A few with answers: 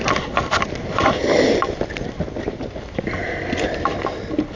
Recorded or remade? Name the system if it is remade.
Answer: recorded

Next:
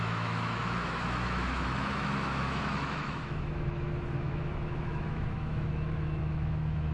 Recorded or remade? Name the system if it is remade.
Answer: remade, autoencoder, DAC-VAE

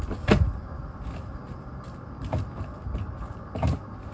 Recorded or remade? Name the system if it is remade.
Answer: recorded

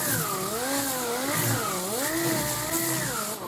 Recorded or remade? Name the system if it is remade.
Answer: recorded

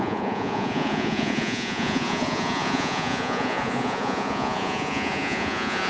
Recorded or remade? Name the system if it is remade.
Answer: remade, vocoder, Vocos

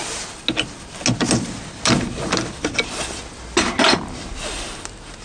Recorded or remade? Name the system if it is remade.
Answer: recorded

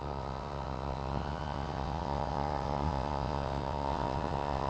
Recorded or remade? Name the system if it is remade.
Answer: remade, vocoder, WaveNeXt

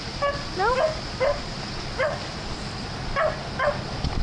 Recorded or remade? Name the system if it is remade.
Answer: recorded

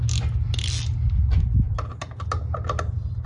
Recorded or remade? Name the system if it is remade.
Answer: recorded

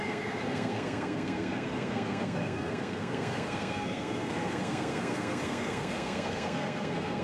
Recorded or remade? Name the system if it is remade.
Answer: remade, codec, SNAC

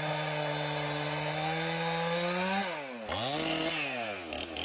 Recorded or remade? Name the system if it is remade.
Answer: recorded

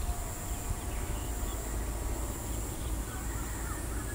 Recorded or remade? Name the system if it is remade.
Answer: recorded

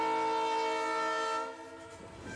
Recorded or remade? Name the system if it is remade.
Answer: recorded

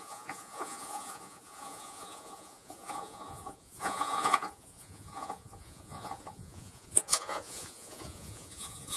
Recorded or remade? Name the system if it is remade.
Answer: remade, vocoder, Vocos